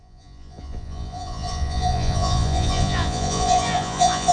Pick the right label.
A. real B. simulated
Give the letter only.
B